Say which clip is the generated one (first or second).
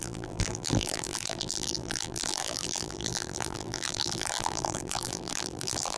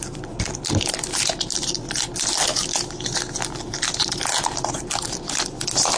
first